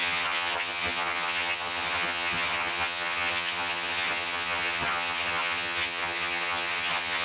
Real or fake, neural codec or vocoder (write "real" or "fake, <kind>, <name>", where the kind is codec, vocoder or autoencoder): fake, vocoder, HiFi-GAN